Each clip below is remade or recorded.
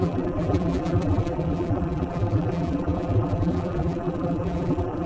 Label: remade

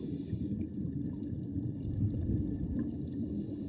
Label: recorded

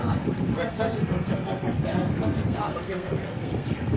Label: remade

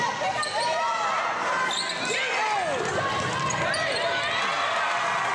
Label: recorded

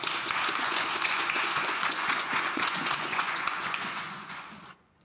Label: remade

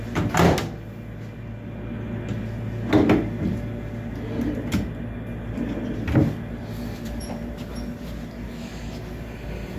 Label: recorded